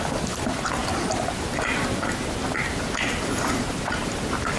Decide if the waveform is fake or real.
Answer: real